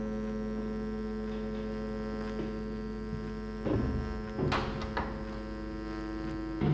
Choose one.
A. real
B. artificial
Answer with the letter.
A